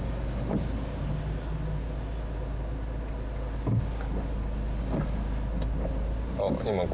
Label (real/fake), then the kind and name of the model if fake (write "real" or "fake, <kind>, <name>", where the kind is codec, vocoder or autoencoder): real